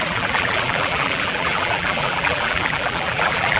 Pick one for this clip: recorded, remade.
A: remade